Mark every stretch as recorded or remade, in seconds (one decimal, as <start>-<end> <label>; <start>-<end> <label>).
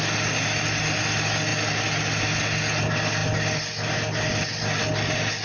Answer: 0.0-5.4 recorded